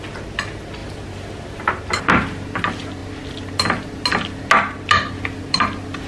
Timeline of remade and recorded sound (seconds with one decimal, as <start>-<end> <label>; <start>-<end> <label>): 0.0-6.1 recorded